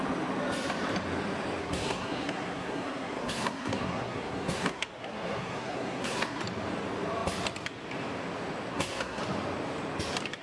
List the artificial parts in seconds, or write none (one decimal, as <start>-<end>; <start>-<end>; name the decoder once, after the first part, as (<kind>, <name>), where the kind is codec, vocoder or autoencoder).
1.6-6.4 (codec, SNAC); 8.7-9.2